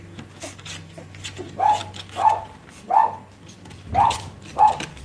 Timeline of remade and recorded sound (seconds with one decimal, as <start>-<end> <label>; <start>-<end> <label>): 0.0-5.0 recorded